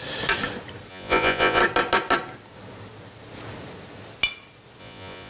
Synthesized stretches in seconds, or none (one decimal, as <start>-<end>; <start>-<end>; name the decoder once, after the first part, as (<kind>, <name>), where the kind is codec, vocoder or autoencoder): 0.9-1.6 (vocoder, Vocos); 4.8-5.3